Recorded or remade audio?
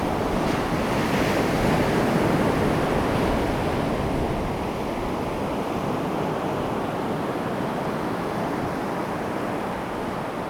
recorded